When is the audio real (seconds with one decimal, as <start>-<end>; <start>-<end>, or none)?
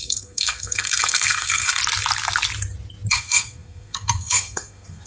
1.8-3.1